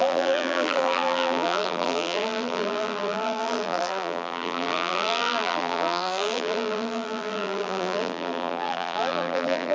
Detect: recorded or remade remade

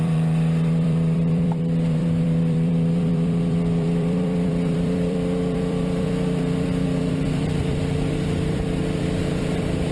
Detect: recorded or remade remade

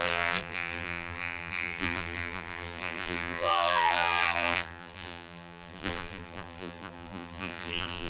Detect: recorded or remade remade